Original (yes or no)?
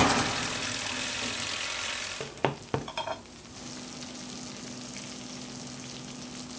yes